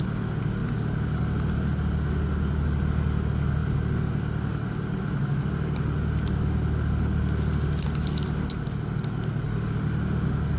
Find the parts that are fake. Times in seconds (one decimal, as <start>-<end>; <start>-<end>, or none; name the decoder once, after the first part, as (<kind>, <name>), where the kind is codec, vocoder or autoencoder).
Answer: none